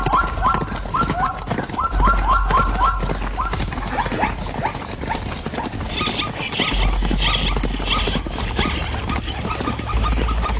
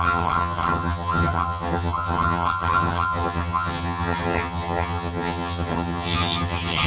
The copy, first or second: second